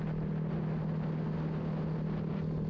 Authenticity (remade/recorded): recorded